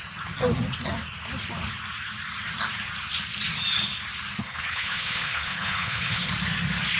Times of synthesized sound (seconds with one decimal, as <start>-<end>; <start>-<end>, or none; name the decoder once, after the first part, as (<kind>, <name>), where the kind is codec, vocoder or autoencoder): 4.4-6.3 (codec, HILCodec)